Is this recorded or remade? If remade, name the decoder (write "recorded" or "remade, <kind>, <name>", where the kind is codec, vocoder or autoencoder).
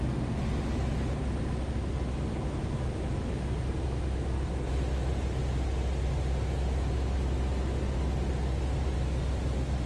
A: recorded